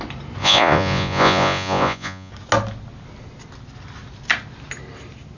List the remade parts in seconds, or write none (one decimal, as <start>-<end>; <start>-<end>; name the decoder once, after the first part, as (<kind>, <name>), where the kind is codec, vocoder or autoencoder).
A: 0.4-2.3 (vocoder, Vocos)

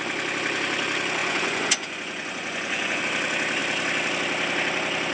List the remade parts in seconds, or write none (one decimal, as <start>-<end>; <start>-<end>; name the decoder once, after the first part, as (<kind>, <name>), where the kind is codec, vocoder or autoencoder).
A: 1.2-3.0 (vocoder, Vocos)

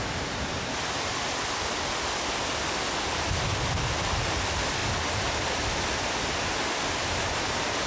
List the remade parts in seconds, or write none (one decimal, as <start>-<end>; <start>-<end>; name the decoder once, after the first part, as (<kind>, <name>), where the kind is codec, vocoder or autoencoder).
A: none